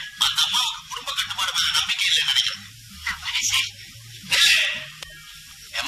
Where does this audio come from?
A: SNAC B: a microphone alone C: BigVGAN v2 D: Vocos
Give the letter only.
B